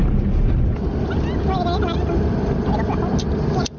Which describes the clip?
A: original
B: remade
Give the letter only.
A